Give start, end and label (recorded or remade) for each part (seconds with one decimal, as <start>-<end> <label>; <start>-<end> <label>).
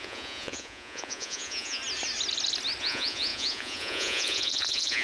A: 0.0-1.8 remade; 1.8-2.8 recorded; 2.8-5.0 remade